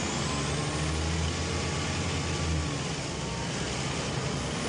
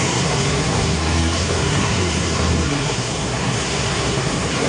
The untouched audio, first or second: first